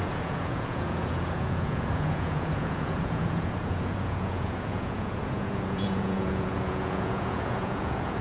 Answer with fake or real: fake